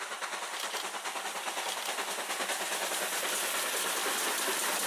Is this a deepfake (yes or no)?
no